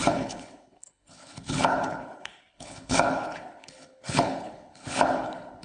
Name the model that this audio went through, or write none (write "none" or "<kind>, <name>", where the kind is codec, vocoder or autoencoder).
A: codec, HILCodec